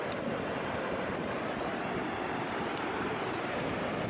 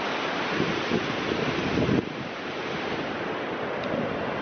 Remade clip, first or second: first